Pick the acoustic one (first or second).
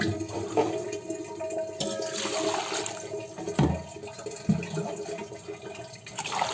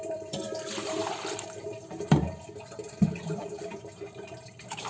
first